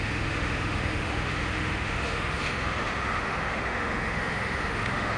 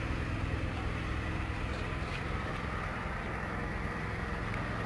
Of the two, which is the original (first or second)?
second